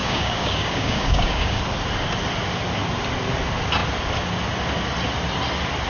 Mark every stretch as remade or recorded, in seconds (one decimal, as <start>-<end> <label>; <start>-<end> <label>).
0.0-1.6 remade; 1.6-5.9 recorded